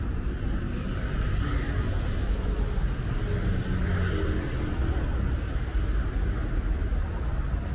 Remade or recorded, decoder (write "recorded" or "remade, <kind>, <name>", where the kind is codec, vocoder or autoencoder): recorded